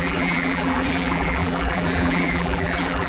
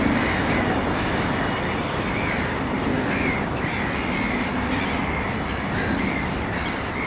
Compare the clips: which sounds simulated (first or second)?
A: first